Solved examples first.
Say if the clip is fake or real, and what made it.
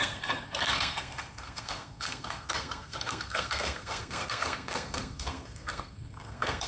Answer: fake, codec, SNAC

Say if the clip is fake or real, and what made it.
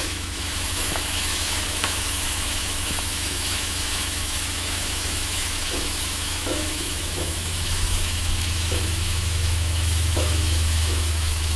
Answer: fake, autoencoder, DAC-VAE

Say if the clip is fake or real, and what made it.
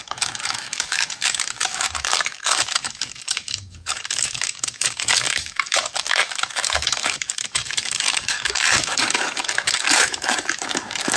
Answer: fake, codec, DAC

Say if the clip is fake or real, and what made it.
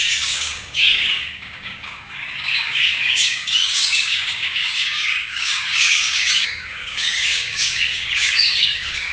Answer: fake, codec, DAC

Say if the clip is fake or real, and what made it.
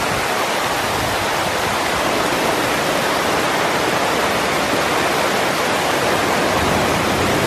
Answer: real